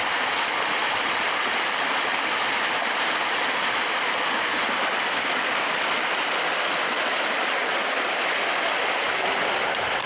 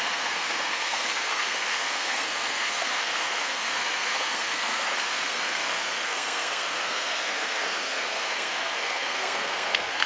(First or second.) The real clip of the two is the first